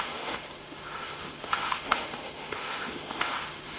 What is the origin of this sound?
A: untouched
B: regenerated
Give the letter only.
B